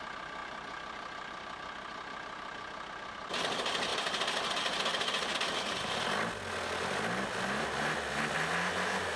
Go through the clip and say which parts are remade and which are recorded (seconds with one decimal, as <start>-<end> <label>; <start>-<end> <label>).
0.0-9.2 recorded